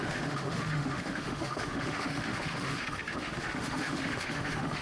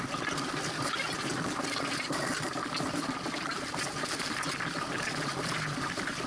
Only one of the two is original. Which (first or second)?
second